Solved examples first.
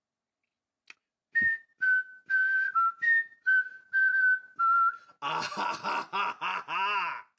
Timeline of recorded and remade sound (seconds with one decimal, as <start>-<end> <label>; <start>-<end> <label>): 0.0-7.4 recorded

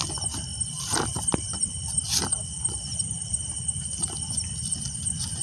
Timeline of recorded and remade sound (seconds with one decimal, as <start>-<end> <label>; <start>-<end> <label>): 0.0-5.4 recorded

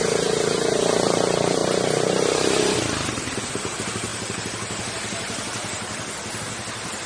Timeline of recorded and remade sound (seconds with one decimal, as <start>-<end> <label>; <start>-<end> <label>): 0.0-7.1 recorded

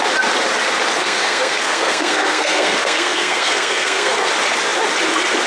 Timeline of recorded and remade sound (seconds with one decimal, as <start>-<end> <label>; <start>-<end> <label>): 0.0-1.0 recorded; 1.0-4.3 remade; 4.3-5.5 recorded